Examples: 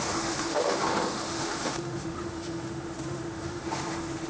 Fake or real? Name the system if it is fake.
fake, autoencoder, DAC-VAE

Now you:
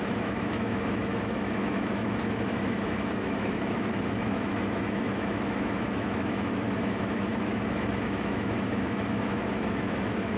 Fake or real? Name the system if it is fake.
fake, autoencoder, DAC-VAE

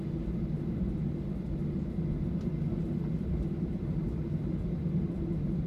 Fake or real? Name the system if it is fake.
real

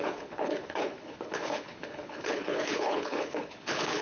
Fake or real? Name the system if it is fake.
fake, codec, HILCodec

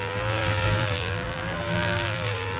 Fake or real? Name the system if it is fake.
fake, vocoder, BigVGAN v2